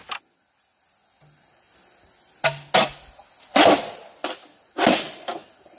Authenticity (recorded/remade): recorded